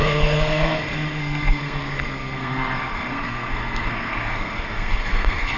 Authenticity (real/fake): fake